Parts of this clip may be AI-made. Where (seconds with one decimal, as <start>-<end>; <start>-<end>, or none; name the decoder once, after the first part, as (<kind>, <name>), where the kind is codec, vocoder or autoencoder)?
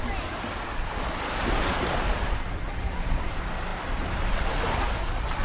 none